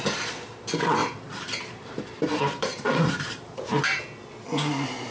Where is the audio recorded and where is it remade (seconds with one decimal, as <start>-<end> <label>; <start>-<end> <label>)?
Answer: 0.0-1.0 recorded; 1.0-4.0 remade; 4.0-5.1 recorded

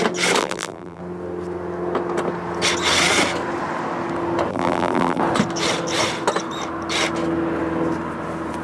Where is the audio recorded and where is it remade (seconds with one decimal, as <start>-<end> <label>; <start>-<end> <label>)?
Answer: 0.0-0.4 recorded; 0.4-1.0 remade; 1.0-4.5 recorded; 4.5-5.2 remade; 5.2-8.6 recorded

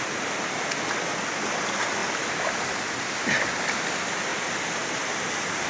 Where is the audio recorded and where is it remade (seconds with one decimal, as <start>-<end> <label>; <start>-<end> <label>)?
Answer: 0.0-4.3 recorded; 4.3-5.7 remade

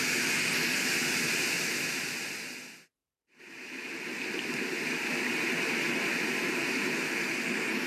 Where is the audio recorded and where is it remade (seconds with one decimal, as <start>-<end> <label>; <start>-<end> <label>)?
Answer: 0.0-3.0 recorded; 3.0-7.0 remade; 7.0-7.9 recorded

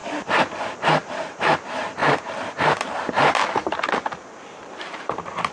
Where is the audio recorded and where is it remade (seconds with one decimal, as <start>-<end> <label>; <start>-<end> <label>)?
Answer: 0.0-0.6 recorded; 0.6-5.5 remade

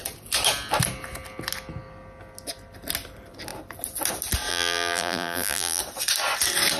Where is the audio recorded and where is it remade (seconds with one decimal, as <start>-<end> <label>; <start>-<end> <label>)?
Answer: 0.0-4.5 recorded; 4.5-5.8 remade; 5.8-6.8 recorded